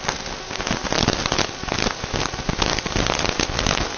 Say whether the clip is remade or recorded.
recorded